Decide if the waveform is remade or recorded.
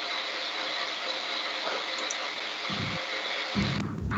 recorded